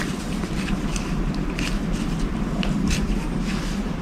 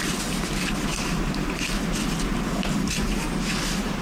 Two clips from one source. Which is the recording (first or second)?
second